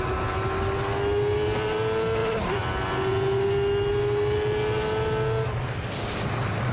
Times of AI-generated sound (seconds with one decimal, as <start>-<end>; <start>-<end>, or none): none